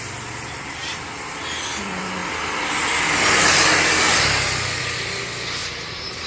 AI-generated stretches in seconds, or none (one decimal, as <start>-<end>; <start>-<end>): 0.8-1.4; 5.6-6.3